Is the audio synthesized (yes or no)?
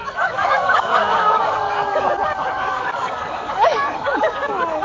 yes